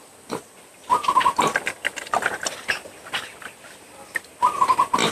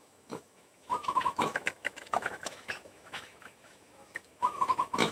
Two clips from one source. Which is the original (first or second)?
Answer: first